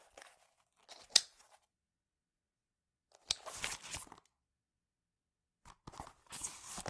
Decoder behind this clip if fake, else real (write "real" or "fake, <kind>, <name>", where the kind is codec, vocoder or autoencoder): real